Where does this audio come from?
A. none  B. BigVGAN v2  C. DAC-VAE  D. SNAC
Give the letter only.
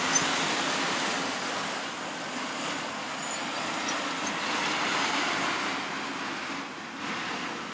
A